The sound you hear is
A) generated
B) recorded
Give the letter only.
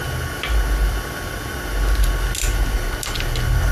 B